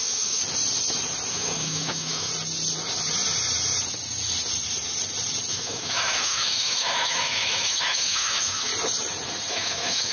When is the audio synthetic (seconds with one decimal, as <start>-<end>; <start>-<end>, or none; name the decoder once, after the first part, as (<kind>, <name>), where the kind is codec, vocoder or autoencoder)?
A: 0.0-0.4 (autoencoder, DAC-VAE); 1.3-2.3; 5.5-8.7; 9.5-10.1